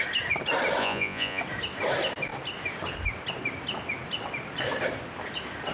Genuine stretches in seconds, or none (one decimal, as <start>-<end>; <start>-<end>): 0.0-0.8; 1.4-5.7